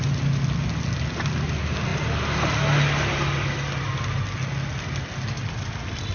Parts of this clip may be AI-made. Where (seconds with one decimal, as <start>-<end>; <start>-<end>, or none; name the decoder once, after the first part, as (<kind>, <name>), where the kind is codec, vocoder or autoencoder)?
none